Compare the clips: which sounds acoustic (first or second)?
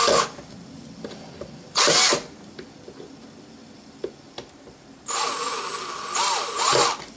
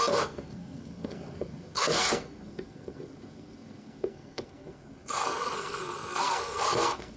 first